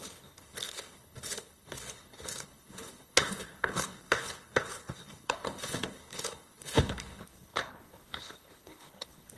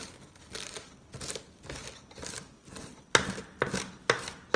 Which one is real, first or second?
second